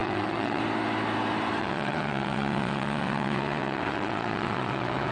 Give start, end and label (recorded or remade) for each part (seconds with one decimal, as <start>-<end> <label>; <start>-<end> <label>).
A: 0.0-0.6 remade; 0.6-1.6 recorded; 1.6-5.1 remade